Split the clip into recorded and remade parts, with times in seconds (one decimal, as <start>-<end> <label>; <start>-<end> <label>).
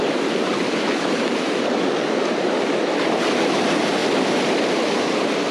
0.0-5.5 recorded